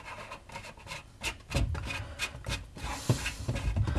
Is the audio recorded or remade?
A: recorded